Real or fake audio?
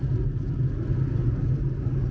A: real